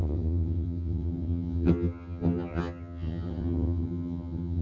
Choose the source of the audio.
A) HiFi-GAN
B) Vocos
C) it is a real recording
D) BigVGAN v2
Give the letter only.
A